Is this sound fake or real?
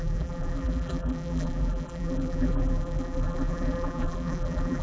fake